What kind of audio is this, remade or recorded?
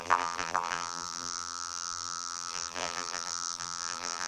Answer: remade